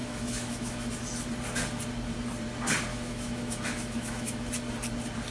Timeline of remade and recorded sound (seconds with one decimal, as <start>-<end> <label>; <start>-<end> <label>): 0.0-0.9 remade; 0.9-2.9 recorded; 2.9-4.5 remade; 4.5-5.3 recorded